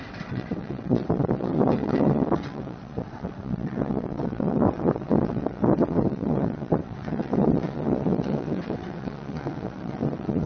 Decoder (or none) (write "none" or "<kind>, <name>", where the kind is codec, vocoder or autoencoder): vocoder, WaveNeXt